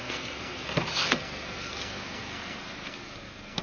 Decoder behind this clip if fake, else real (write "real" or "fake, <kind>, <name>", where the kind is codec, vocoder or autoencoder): fake, codec, SNAC